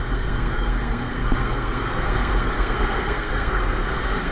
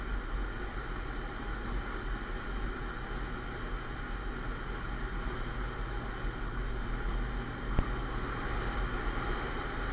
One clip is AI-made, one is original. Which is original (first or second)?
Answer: second